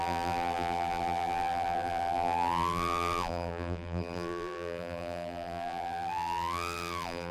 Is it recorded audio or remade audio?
remade